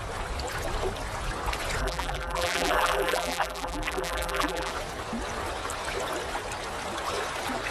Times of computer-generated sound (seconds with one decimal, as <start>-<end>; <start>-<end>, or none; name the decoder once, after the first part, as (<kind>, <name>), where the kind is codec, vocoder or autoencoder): 1.8-4.7 (vocoder, BigVGAN v2)